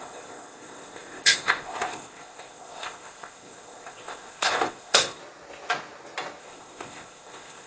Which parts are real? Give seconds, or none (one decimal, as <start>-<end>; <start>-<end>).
5.2-6.4